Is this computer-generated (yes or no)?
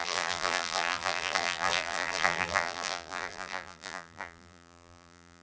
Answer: yes